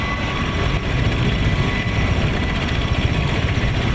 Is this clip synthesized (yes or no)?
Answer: no